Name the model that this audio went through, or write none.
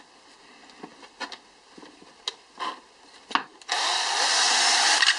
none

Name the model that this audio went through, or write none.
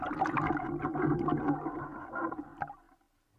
none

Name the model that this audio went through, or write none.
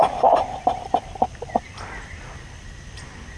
none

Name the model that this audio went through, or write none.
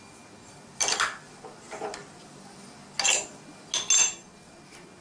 none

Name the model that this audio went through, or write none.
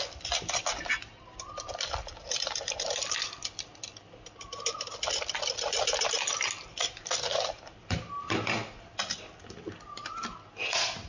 none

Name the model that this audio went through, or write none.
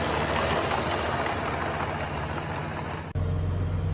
none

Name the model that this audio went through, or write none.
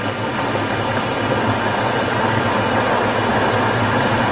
none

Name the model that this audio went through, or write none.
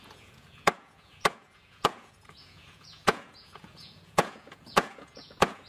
vocoder, Vocos